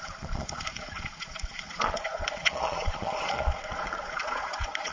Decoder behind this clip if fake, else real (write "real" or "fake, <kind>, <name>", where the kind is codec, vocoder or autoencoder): fake, vocoder, Vocos